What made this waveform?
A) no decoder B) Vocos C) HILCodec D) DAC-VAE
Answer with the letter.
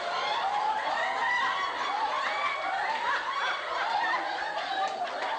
A